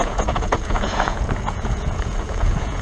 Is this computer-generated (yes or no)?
yes